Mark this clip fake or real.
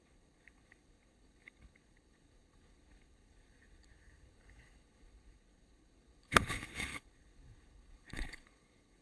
fake